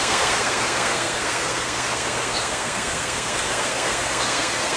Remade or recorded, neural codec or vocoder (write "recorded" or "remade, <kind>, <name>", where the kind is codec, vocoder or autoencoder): remade, codec, SNAC